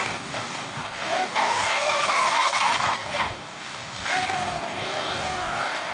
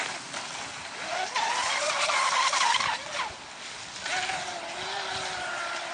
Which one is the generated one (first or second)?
first